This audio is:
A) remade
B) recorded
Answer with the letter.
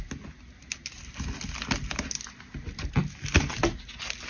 B